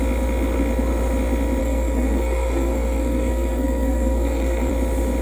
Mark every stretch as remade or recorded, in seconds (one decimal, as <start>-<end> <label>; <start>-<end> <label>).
0.0-1.6 recorded; 1.6-4.7 remade; 4.7-5.2 recorded